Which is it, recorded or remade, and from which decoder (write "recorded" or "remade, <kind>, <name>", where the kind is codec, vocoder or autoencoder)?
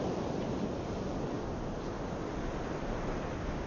recorded